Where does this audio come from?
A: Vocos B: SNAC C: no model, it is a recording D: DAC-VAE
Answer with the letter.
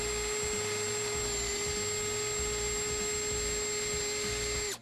C